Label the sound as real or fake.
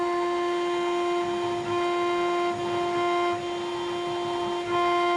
real